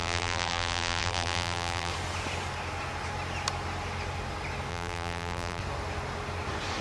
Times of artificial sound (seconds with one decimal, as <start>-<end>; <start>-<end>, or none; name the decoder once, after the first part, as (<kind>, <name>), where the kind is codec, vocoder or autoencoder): 0.0-1.9 (vocoder, BigVGAN v2); 4.7-5.6